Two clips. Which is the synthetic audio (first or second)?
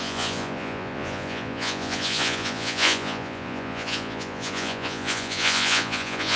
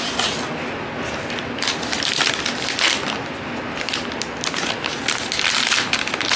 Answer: first